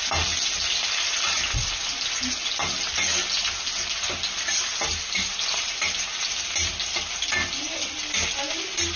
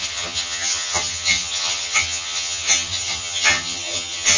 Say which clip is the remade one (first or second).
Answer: second